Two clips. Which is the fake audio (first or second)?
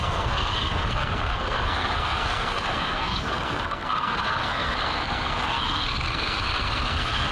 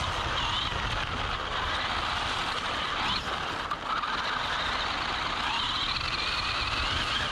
first